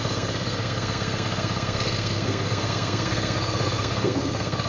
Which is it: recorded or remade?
remade